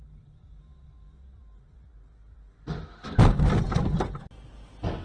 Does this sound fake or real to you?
real